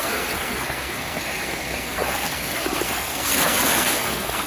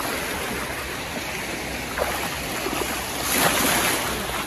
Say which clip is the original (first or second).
second